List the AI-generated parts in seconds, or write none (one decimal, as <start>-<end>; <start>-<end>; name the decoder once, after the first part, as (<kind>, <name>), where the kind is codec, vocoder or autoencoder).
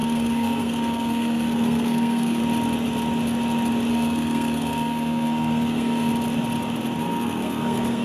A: 0.0-2.4 (codec, SNAC); 3.9-6.1; 7.0-8.0